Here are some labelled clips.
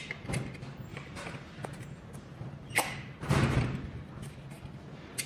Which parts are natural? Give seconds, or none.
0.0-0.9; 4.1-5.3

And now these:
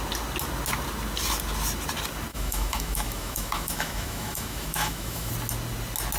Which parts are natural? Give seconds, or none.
0.0-2.3; 5.3-6.2